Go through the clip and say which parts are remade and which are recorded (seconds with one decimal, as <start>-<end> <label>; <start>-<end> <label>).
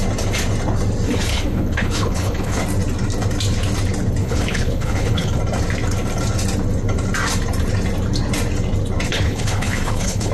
0.0-1.3 recorded; 1.3-2.6 remade; 2.6-4.2 recorded; 4.2-5.4 remade; 5.4-9.1 recorded; 9.1-10.3 remade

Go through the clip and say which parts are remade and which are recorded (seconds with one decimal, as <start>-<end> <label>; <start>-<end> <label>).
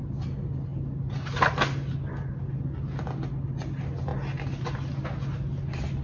0.0-6.0 recorded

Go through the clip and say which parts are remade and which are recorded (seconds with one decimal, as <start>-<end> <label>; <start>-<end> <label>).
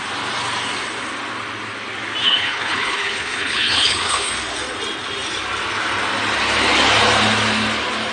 0.0-2.2 recorded; 2.2-4.3 remade; 4.3-8.1 recorded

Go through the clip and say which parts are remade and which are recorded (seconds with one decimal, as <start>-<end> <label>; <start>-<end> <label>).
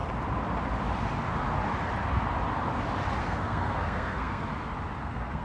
0.0-3.2 recorded; 3.2-4.5 remade; 4.5-5.0 recorded; 5.0-5.4 remade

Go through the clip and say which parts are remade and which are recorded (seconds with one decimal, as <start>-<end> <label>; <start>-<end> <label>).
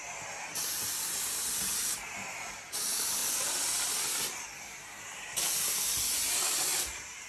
0.0-3.2 remade; 3.2-4.2 recorded; 4.2-7.3 remade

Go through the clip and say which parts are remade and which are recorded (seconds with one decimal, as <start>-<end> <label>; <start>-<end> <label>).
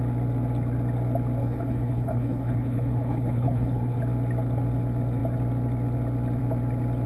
0.0-1.4 recorded; 1.4-4.0 remade; 4.0-7.1 recorded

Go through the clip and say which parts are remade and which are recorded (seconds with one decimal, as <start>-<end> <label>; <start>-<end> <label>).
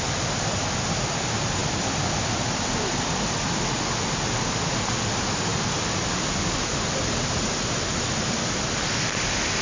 0.0-9.6 recorded